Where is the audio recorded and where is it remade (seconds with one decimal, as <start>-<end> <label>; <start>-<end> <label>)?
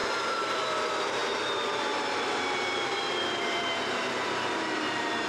0.0-5.3 remade